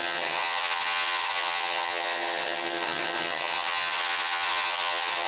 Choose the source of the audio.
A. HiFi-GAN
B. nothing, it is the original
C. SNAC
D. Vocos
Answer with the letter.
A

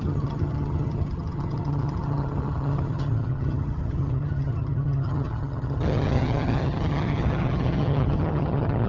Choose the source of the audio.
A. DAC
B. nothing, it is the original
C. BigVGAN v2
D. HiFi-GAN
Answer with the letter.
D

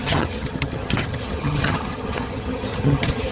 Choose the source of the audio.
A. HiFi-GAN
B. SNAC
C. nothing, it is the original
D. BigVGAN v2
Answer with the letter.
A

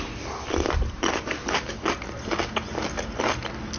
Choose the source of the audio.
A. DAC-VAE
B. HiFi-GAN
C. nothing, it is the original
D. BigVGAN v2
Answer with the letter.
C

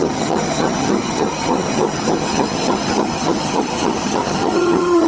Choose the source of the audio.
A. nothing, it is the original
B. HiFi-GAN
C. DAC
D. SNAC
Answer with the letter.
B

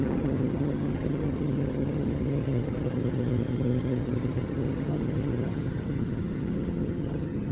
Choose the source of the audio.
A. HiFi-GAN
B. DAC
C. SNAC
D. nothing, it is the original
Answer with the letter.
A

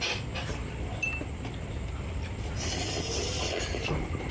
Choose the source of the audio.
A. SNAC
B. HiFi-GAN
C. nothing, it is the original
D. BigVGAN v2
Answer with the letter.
C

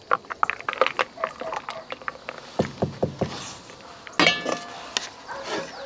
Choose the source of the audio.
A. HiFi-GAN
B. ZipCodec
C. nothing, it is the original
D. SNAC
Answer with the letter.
C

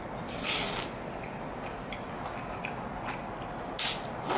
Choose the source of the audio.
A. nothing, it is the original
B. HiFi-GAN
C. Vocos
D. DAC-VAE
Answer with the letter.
A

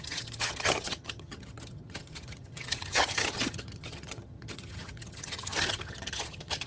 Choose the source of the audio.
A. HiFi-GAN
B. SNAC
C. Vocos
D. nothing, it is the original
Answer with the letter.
A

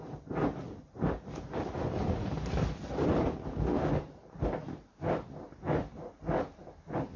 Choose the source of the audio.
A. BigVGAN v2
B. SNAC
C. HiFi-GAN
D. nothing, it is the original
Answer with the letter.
D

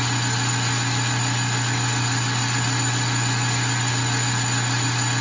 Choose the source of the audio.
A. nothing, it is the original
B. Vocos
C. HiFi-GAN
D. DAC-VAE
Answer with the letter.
A